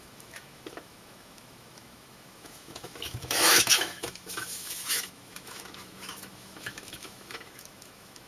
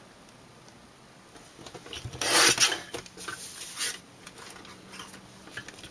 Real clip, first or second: second